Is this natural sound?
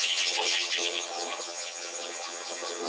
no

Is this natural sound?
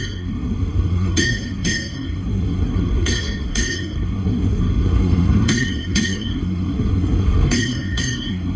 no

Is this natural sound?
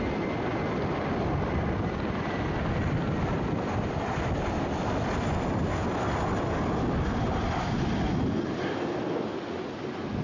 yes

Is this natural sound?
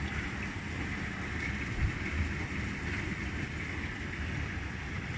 yes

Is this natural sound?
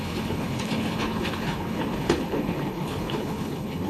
no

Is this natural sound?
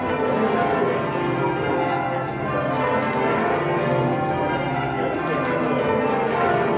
yes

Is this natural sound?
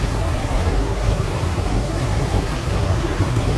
no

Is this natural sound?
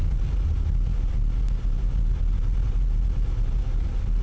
yes